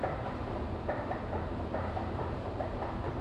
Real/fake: fake